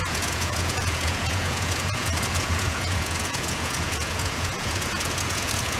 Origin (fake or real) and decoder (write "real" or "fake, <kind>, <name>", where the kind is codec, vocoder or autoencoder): fake, vocoder, Vocos